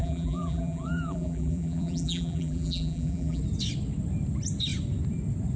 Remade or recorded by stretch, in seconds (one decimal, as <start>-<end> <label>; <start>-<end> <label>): 0.0-3.4 remade; 3.4-5.6 recorded

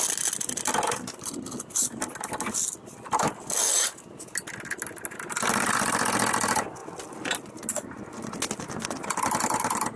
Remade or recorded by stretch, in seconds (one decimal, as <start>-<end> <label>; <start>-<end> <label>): 0.0-10.0 recorded